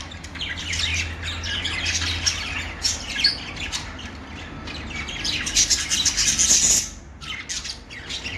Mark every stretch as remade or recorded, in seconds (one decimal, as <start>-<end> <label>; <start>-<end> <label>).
0.0-8.4 recorded